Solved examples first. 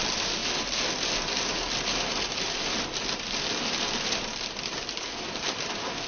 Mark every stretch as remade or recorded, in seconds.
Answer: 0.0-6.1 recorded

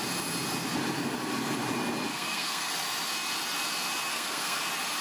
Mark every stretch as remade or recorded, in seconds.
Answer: 0.0-2.1 recorded; 2.1-2.7 remade; 2.7-4.1 recorded; 4.1-4.6 remade; 4.6-5.0 recorded

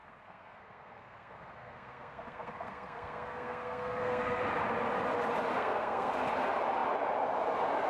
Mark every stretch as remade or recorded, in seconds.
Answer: 0.0-4.4 remade; 4.4-5.5 recorded; 5.5-6.1 remade; 6.1-7.9 recorded

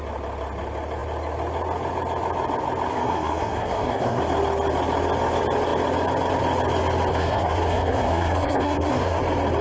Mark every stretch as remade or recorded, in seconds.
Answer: 0.0-2.9 recorded; 2.9-4.2 remade; 4.2-7.1 recorded; 7.1-9.2 remade; 9.2-9.6 recorded

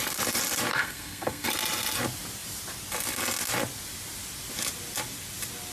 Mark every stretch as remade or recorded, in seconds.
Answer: 0.0-0.7 recorded; 0.7-1.5 remade; 1.5-5.7 recorded

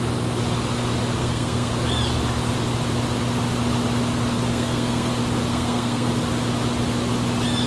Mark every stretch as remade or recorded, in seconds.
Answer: 0.0-1.2 recorded; 1.2-1.7 remade; 1.7-4.5 recorded; 4.5-5.1 remade; 5.1-5.5 recorded; 5.5-6.1 remade; 6.1-7.7 recorded

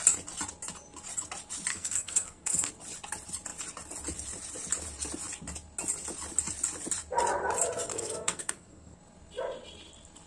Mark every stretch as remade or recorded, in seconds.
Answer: 0.0-1.7 recorded; 1.7-2.7 remade; 2.7-7.9 recorded; 7.9-9.0 remade; 9.0-10.3 recorded